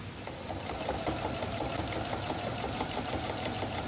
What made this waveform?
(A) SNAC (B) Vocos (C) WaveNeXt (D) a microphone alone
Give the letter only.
D